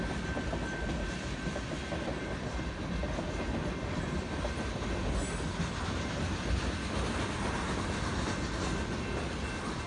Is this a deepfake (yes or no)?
no